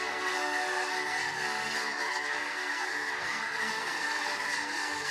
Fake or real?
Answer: fake